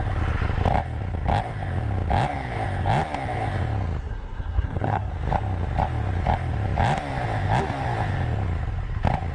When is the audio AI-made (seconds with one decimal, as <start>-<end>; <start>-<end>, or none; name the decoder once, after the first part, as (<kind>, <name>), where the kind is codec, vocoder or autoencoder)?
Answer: 4.0-5.1 (codec, SNAC)